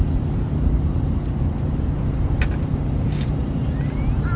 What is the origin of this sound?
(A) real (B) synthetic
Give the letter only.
A